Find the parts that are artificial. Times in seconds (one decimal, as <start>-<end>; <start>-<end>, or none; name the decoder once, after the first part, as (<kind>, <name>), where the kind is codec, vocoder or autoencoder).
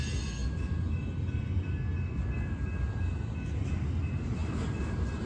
none